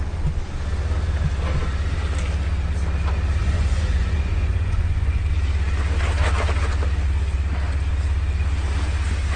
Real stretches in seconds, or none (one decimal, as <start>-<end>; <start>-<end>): 0.0-3.4; 5.2-9.4